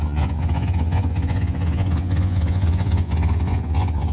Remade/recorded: remade